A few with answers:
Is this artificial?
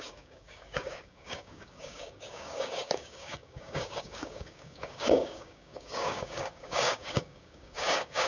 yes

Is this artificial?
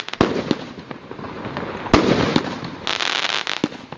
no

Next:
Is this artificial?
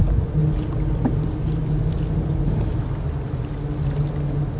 no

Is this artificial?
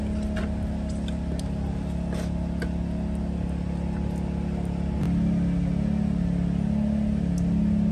no